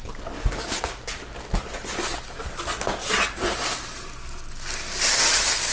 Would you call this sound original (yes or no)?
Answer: yes